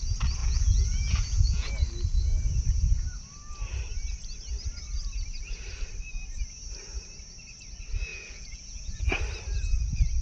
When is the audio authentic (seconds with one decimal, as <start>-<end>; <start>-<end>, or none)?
0.0-0.4; 1.7-8.1; 9.2-10.2